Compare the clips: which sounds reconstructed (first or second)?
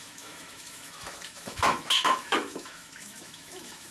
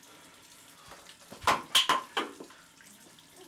first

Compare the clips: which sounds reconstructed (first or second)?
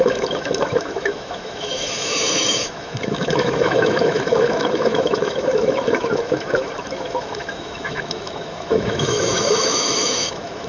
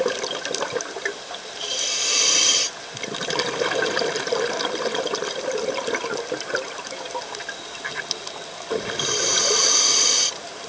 first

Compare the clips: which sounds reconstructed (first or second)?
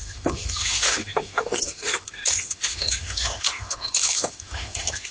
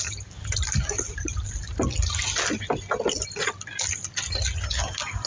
first